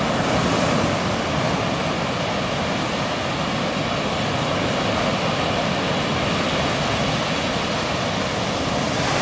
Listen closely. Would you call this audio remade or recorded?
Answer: recorded